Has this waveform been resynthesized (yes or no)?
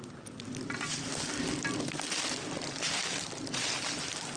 no